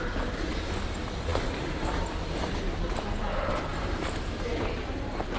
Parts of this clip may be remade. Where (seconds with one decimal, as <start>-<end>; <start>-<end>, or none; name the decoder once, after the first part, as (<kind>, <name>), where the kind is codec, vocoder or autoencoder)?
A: none